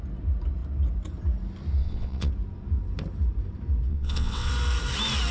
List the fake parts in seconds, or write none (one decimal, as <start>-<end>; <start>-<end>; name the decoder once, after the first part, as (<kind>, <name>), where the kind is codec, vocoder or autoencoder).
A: 1.8-2.3 (vocoder, WaveNeXt); 3.9-4.5